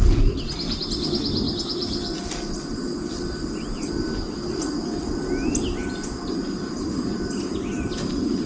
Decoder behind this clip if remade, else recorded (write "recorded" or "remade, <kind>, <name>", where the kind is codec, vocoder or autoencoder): recorded